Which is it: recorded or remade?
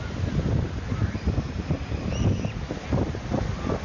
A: recorded